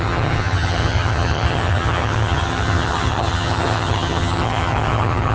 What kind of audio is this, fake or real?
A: fake